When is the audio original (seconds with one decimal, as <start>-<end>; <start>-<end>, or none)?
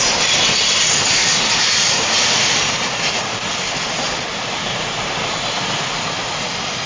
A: 0.0-6.9